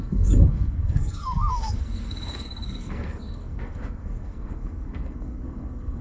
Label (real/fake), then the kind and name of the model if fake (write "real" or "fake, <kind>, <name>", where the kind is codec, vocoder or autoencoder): fake, codec, SNAC